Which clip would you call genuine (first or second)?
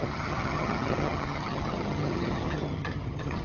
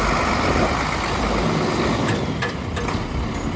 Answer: second